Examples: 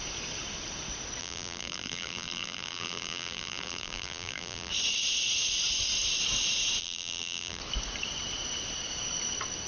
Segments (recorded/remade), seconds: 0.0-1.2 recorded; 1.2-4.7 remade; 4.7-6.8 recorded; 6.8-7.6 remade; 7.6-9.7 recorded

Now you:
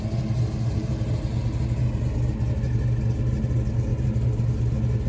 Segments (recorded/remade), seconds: 0.0-3.9 recorded; 3.9-4.4 remade; 4.4-5.1 recorded

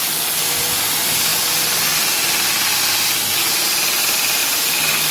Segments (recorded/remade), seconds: 0.0-5.1 recorded

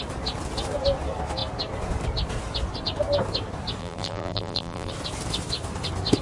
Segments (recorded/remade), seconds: 0.0-3.8 recorded; 3.8-4.9 remade; 4.9-6.2 recorded

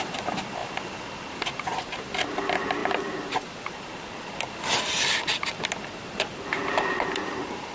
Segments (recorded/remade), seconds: 0.0-7.7 recorded

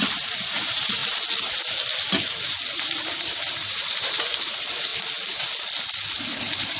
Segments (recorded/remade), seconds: 0.0-1.0 remade; 1.0-2.1 recorded; 2.1-4.9 remade; 4.9-6.1 recorded; 6.1-6.8 remade

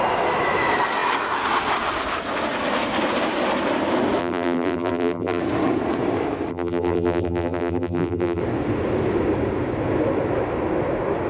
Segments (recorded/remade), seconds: 0.0-4.2 recorded; 4.2-5.4 remade; 5.4-6.5 recorded; 6.5-8.4 remade; 8.4-11.3 recorded

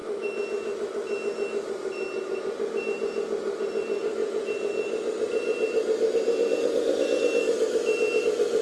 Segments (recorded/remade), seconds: 0.0-2.8 recorded; 2.8-4.2 remade; 4.2-8.2 recorded; 8.2-8.6 remade